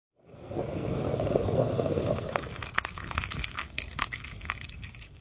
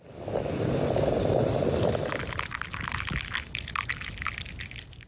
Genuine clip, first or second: second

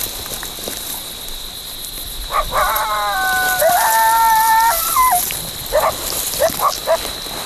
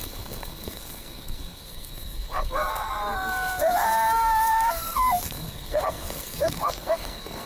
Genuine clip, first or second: first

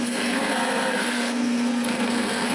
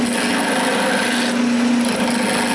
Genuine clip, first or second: second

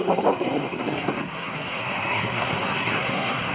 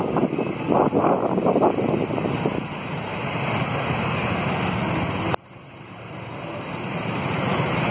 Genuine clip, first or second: second